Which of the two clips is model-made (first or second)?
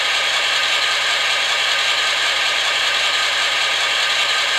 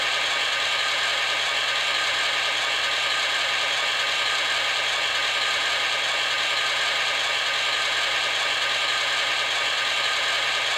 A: first